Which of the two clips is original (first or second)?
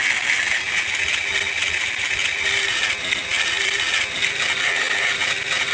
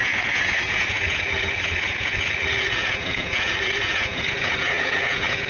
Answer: first